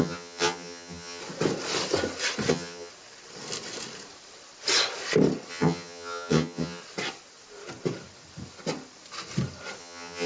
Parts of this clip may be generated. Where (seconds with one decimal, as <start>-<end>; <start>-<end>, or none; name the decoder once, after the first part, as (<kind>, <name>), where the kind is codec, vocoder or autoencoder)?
0.0-1.2 (vocoder, HiFi-GAN); 2.5-2.9; 5.5-6.8; 9.8-10.3